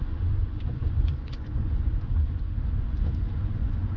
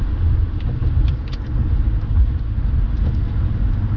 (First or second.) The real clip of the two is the second